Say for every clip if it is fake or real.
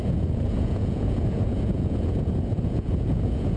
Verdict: fake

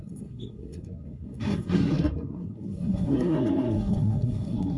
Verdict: fake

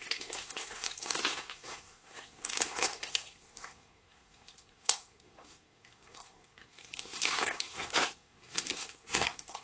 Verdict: fake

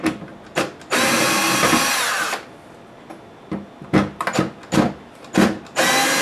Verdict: real